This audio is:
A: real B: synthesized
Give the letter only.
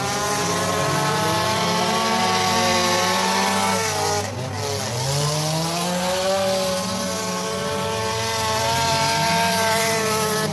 A